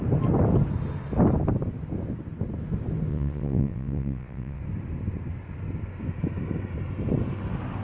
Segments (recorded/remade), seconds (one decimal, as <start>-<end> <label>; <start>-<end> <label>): 0.0-3.1 recorded; 3.1-4.6 remade; 4.6-7.8 recorded

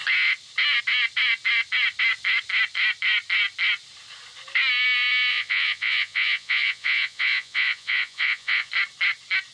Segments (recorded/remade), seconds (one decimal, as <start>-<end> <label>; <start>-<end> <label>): 0.0-5.3 recorded; 5.3-8.7 remade; 8.7-9.5 recorded

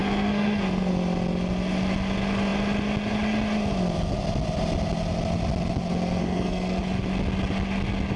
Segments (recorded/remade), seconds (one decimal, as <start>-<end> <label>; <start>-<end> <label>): 0.0-0.9 remade; 0.9-6.2 recorded; 6.2-6.8 remade; 6.8-8.2 recorded

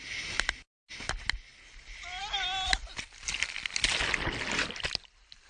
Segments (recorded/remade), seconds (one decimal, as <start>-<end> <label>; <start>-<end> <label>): 0.0-5.5 recorded

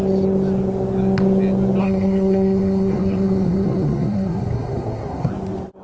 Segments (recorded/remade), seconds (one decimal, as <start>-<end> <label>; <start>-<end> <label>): 0.0-1.8 recorded; 1.8-5.3 remade; 5.3-5.8 recorded

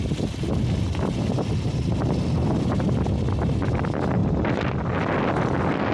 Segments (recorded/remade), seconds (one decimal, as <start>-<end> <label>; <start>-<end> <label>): 0.0-5.9 recorded

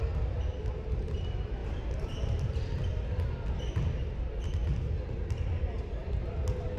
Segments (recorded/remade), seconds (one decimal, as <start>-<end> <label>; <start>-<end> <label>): 0.0-1.6 recorded; 1.6-2.8 remade; 2.8-6.8 recorded

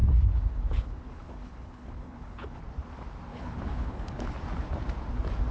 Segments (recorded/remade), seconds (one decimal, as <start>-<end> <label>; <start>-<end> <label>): 0.0-2.6 remade; 2.6-3.3 recorded; 3.3-4.3 remade; 4.3-5.5 recorded